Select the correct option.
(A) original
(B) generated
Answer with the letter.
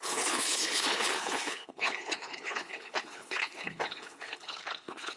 B